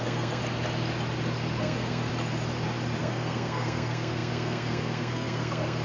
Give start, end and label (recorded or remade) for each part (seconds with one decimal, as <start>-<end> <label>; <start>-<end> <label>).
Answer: 0.0-0.4 remade; 0.4-1.6 recorded; 1.6-2.1 remade; 2.1-3.0 recorded; 3.0-5.8 remade